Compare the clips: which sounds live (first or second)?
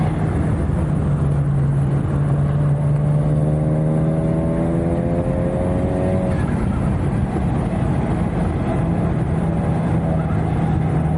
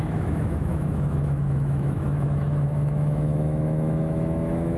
first